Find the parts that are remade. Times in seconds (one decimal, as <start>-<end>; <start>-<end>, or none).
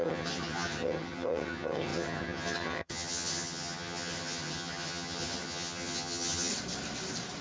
0.0-6.5